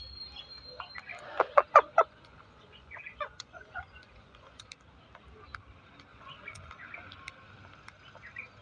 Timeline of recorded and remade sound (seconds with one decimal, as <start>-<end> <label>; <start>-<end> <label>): 0.0-1.1 recorded; 1.1-4.7 remade; 4.7-6.1 recorded; 6.1-6.7 remade; 6.7-8.6 recorded

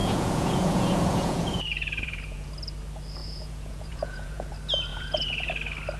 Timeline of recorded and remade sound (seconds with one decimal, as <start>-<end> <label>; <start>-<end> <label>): 0.0-2.5 remade; 2.5-3.2 recorded; 3.2-4.5 remade; 4.5-4.9 recorded; 4.9-5.5 remade; 5.5-6.0 recorded

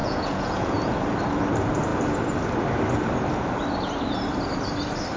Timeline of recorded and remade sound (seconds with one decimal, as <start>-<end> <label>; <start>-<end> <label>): 0.0-0.9 remade; 0.9-5.2 recorded

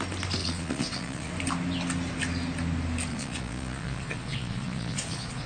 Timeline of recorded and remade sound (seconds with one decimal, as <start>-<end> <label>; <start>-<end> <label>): 0.0-0.4 recorded; 0.4-1.3 remade; 1.3-3.1 recorded; 3.1-5.5 remade

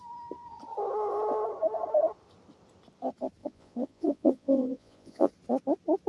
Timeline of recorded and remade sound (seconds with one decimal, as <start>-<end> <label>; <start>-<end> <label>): 0.0-3.4 recorded; 3.4-5.3 remade; 5.3-6.1 recorded

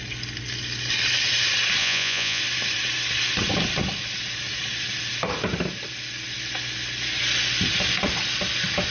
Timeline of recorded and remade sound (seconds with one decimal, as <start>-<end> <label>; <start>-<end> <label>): 0.0-1.8 recorded; 1.8-2.4 remade; 2.4-8.9 recorded